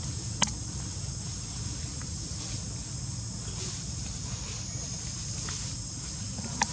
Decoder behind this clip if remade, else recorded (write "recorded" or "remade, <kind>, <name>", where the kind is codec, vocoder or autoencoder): recorded